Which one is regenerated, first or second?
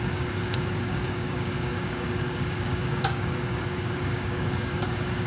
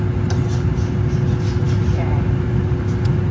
first